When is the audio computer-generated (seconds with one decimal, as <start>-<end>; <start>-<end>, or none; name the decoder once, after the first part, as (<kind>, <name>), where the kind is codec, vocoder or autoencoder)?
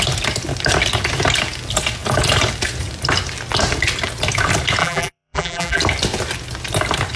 4.8-5.8 (vocoder, BigVGAN v2)